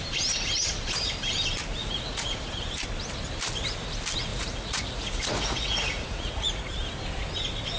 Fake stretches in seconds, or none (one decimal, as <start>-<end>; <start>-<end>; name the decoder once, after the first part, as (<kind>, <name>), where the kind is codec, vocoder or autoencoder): 1.8-2.4 (vocoder, Vocos); 4.3-6.7